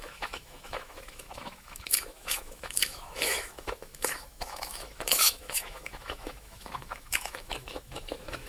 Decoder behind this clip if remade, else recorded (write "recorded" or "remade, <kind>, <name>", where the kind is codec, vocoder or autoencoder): remade, autoencoder, DAC-VAE